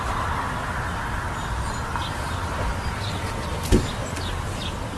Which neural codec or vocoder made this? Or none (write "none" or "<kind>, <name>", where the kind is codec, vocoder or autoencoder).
none